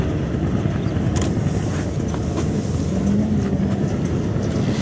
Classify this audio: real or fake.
real